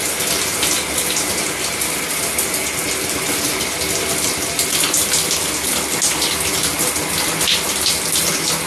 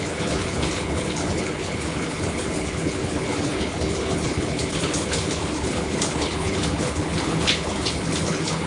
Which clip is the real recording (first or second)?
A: first